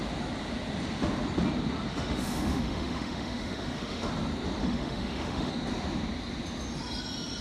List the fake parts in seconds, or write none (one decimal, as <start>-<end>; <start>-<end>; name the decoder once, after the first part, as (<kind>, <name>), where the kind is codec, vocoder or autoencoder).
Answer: 1.9-4.1 (autoencoder, DAC-VAE); 4.6-5.5